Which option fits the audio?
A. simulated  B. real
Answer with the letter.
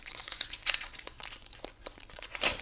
A